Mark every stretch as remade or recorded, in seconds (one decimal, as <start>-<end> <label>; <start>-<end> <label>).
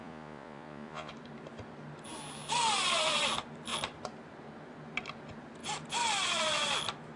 0.0-1.1 remade; 1.1-7.2 recorded